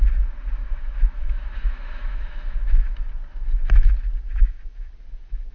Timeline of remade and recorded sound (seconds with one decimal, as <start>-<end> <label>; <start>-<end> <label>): 0.0-0.6 recorded; 0.6-3.0 remade; 3.0-4.4 recorded; 4.4-4.9 remade; 4.9-5.5 recorded